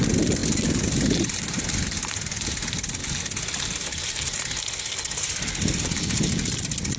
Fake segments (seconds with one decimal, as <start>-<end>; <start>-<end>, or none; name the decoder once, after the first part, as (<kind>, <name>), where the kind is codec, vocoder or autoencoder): none